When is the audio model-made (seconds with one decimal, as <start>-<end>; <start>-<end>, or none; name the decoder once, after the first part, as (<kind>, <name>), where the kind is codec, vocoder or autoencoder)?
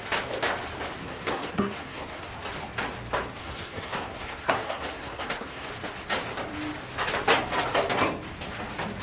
1.0-2.3 (codec, SNAC); 3.4-5.7